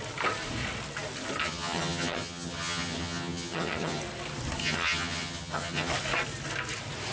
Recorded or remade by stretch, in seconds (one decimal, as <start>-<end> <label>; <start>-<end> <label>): 0.0-1.4 recorded; 1.4-4.0 remade; 4.0-4.6 recorded; 4.6-5.9 remade; 5.9-7.1 recorded